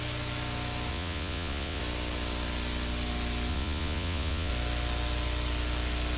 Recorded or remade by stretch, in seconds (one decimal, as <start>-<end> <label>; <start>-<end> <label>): 0.0-0.9 recorded; 0.9-1.8 remade; 1.8-3.5 recorded; 3.5-4.5 remade; 4.5-6.2 recorded